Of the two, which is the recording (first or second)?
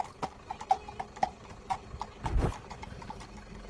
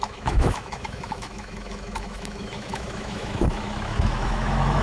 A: first